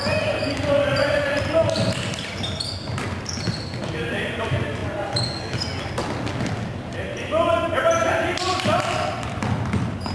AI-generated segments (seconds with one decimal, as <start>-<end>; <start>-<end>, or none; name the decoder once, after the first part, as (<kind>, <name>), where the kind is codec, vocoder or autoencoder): none